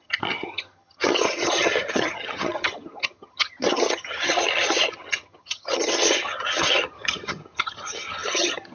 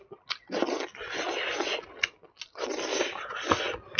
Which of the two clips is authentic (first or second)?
second